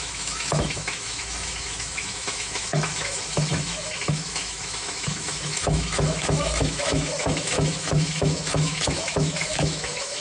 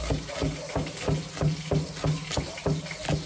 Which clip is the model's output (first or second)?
first